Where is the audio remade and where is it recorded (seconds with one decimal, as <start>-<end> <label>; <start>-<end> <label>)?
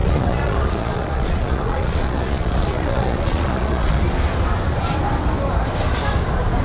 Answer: 0.0-4.0 remade; 4.0-6.6 recorded